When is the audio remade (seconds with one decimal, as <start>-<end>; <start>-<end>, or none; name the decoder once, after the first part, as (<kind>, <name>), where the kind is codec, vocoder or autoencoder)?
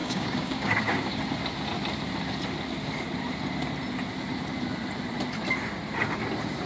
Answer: 0.0-1.2 (codec, DAC)